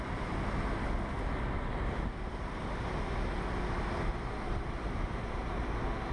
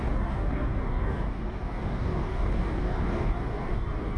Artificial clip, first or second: second